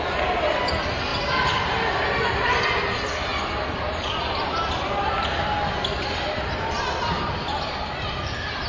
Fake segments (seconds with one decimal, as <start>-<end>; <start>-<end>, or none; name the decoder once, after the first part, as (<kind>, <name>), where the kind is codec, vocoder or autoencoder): 1.1-2.6 (vocoder, BigVGAN v2); 3.3-5.2